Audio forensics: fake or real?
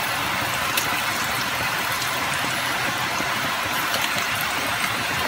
fake